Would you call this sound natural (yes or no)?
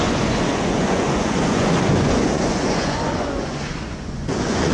no